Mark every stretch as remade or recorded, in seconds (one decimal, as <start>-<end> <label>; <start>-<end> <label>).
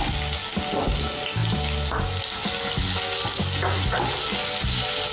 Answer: 0.0-5.1 recorded